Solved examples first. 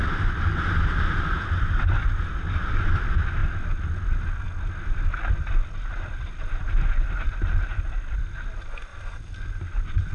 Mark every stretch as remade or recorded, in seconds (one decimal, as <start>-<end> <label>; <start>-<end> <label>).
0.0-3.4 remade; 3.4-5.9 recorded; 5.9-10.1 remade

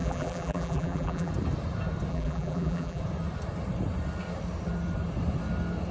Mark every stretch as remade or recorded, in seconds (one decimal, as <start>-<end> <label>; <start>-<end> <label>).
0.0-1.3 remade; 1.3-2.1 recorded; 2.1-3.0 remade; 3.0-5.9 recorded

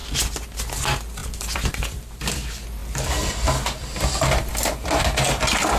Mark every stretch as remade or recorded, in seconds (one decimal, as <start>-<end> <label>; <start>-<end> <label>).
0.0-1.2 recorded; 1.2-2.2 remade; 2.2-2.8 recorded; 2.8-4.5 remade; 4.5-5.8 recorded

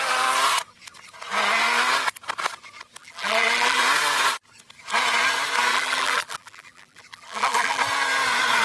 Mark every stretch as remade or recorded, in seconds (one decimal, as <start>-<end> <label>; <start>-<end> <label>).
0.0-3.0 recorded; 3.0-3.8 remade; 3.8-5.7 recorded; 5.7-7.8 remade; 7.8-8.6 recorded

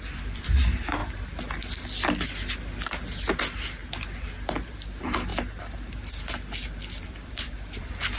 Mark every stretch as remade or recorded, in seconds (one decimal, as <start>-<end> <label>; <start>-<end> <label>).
0.0-1.0 remade; 1.0-3.4 recorded; 3.4-3.8 remade; 3.8-4.5 recorded; 4.5-5.3 remade; 5.3-7.0 recorded; 7.0-8.2 remade